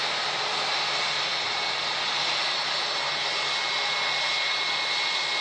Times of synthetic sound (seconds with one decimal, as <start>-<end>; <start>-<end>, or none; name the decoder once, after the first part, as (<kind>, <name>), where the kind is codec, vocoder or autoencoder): none